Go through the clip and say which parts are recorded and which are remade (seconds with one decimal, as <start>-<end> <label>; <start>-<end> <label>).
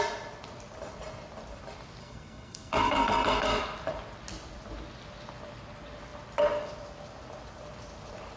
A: 0.0-2.0 recorded; 2.0-3.6 remade; 3.6-8.4 recorded